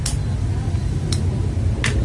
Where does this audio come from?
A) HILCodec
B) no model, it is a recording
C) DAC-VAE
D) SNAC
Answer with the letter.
B